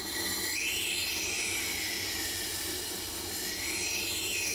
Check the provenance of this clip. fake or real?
real